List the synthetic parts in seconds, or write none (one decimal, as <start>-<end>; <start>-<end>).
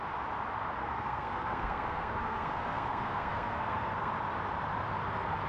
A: 0.8-4.1